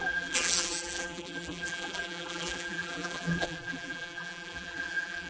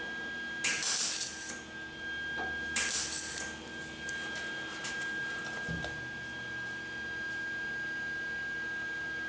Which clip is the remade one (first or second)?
first